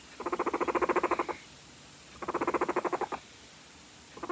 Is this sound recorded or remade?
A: recorded